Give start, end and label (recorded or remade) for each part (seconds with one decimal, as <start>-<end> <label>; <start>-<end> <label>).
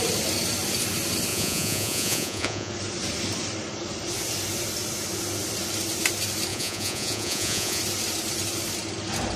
0.0-1.3 recorded; 1.3-2.7 remade; 2.7-6.5 recorded; 6.5-7.8 remade; 7.8-9.4 recorded